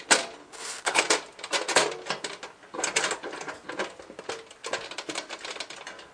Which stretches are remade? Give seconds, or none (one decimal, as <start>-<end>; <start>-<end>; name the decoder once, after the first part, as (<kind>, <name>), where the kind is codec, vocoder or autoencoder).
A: 0.4-1.0 (codec, HILCodec)